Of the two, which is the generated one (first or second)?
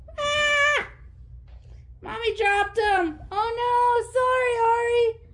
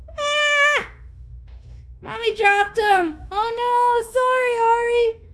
second